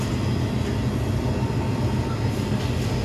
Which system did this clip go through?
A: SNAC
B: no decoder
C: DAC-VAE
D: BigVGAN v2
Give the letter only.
B